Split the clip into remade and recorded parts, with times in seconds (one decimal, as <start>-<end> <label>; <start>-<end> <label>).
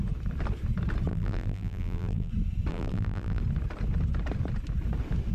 0.0-1.1 recorded; 1.1-2.3 remade; 2.3-2.7 recorded; 2.7-3.4 remade; 3.4-5.3 recorded